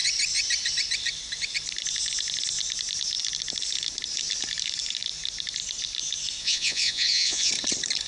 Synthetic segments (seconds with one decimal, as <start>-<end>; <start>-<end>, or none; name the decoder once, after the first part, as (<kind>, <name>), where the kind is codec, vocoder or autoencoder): 6.4-7.5 (vocoder, Vocos)